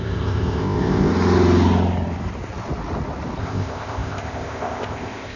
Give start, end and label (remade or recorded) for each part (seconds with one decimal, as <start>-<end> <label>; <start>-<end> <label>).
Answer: 0.0-1.1 remade; 1.1-3.4 recorded; 3.4-5.4 remade